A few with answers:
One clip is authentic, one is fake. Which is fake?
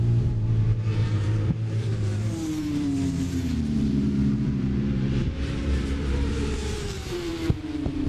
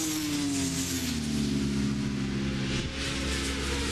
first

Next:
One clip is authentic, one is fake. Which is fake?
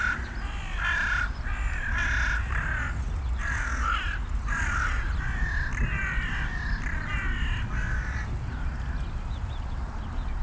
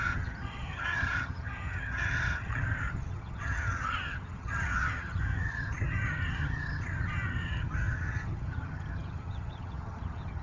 second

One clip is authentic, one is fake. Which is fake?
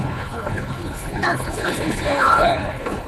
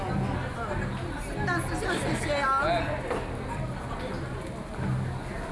first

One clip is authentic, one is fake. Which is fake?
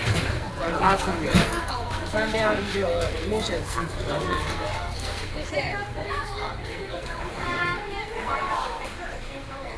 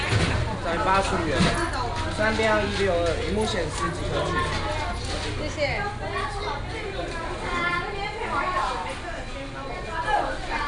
first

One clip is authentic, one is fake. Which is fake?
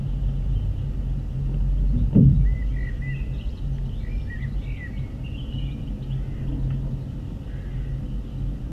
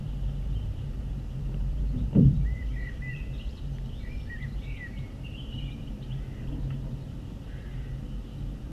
second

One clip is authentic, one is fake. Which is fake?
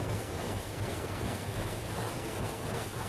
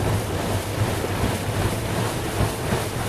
first